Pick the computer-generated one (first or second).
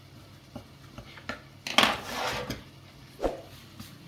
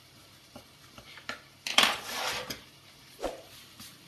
second